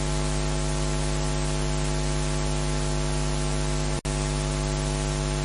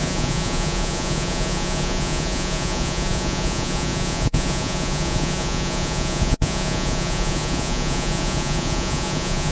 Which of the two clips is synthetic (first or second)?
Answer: second